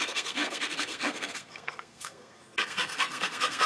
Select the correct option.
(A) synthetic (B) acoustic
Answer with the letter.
A